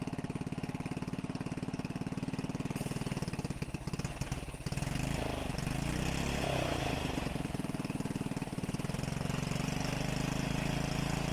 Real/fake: real